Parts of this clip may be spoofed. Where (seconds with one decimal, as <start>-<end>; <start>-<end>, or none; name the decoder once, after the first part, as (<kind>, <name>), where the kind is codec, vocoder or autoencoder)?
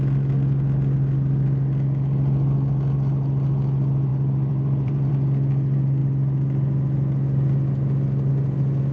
4.1-5.1 (vocoder, BigVGAN v2)